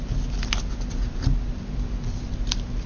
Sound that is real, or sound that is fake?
real